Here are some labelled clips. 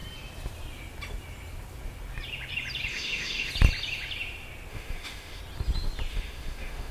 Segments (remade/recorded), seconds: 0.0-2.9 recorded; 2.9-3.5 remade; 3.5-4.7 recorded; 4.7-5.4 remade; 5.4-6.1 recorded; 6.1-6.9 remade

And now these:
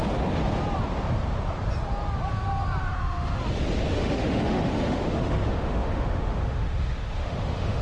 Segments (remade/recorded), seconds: 0.0-2.9 recorded; 2.9-3.4 remade; 3.4-3.9 recorded; 3.9-7.8 remade